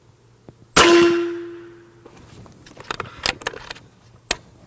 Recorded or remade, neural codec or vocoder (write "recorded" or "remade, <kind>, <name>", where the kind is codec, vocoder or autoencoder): recorded